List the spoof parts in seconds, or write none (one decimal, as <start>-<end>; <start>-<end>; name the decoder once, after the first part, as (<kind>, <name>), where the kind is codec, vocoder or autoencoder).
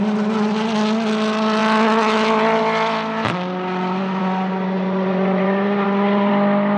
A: 4.2-6.3 (vocoder, Vocos)